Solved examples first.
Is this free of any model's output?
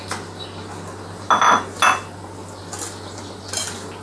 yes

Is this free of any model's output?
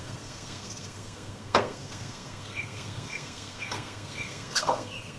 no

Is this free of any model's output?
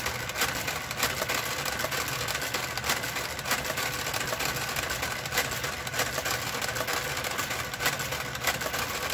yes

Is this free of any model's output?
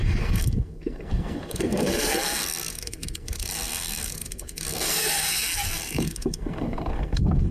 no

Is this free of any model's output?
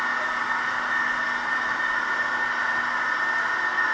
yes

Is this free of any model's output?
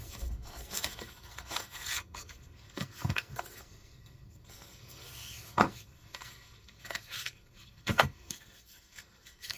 no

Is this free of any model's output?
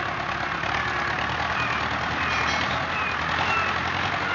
yes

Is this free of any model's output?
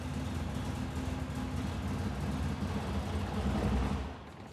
yes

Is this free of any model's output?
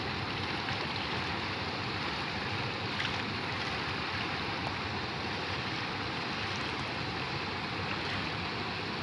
yes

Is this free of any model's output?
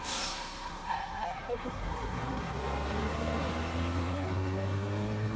no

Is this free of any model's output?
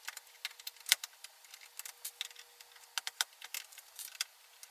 yes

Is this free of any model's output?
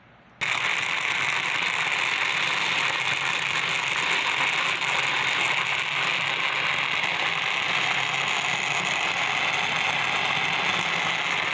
yes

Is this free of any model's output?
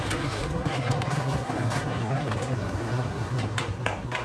no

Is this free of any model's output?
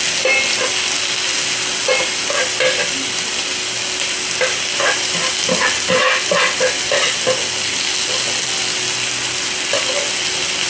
yes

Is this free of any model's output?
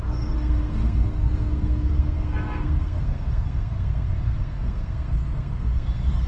no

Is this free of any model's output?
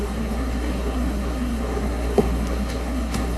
no